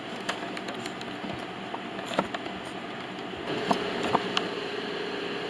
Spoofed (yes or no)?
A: no